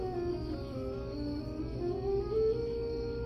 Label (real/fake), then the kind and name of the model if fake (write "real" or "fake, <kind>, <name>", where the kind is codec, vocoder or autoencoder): real